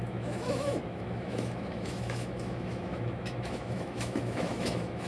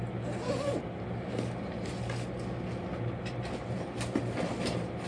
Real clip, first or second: second